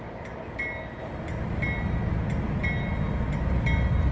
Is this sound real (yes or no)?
yes